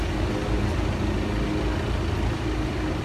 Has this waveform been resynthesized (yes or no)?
no